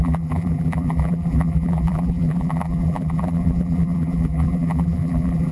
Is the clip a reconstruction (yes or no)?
yes